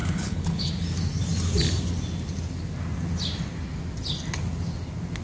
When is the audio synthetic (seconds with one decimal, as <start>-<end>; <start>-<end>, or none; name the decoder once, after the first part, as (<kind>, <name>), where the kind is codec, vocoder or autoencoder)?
0.0-0.7 (codec, HILCodec)